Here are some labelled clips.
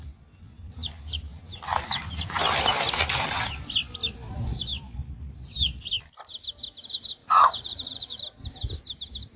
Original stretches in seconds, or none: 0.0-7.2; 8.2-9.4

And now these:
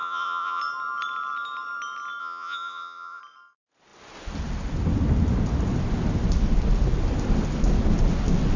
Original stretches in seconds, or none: 0.6-2.2; 3.2-8.6

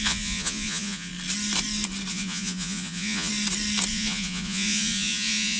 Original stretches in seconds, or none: 1.1-2.1; 3.3-3.9

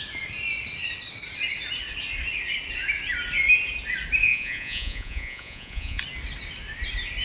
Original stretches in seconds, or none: 0.0-4.2; 6.0-7.2